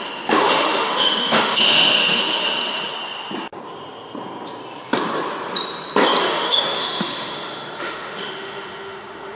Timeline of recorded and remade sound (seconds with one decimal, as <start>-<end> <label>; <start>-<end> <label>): 0.0-2.9 remade; 2.9-6.2 recorded; 6.2-9.4 remade